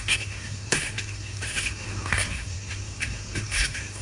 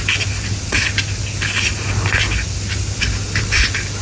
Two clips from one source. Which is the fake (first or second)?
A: first